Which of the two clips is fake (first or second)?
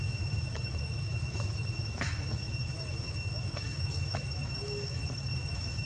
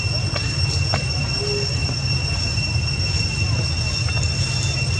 first